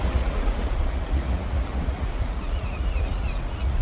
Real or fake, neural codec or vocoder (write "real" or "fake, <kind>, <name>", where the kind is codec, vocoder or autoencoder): fake, vocoder, Vocos